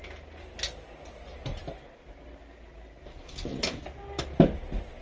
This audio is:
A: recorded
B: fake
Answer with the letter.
A